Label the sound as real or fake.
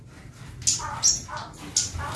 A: real